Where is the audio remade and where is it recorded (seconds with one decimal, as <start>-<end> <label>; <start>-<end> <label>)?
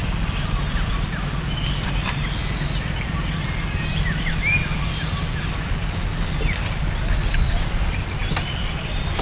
0.0-9.2 recorded